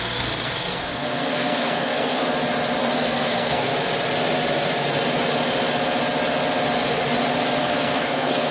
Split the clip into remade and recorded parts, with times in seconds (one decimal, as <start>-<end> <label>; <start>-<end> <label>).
0.0-2.2 remade; 2.2-2.8 recorded; 2.8-3.7 remade; 3.7-7.6 recorded; 7.6-8.5 remade